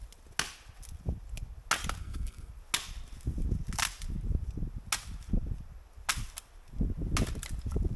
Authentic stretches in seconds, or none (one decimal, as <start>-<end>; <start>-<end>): 0.0-2.0; 2.5-8.0